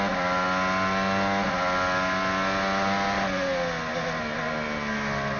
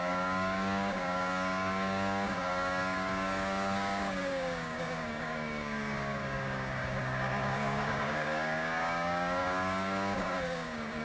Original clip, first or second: first